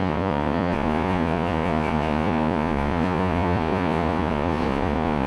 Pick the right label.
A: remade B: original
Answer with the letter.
A